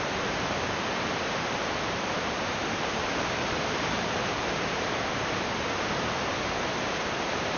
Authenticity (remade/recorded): remade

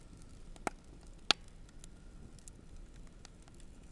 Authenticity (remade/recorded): recorded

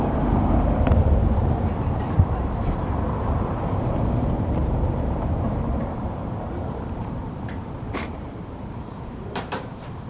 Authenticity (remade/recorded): remade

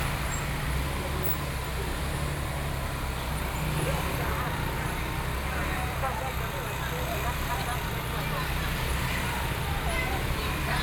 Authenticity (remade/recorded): recorded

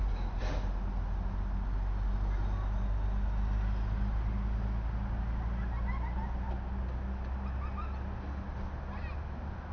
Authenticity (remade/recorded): recorded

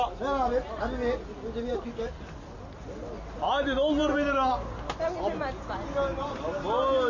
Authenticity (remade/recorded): recorded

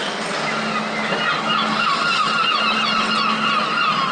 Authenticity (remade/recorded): recorded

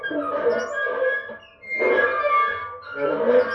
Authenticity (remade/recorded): recorded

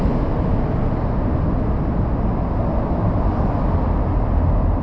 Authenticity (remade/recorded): recorded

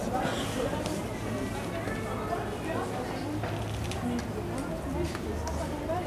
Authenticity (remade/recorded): recorded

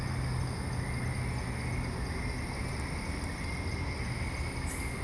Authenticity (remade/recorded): recorded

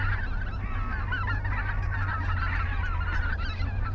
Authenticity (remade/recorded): recorded